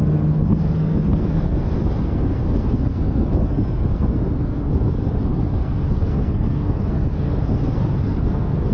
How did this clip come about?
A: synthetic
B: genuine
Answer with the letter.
A